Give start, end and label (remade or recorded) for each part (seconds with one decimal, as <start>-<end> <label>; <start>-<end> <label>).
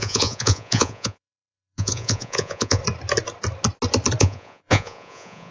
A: 0.0-2.8 remade; 2.8-4.2 recorded; 4.2-5.5 remade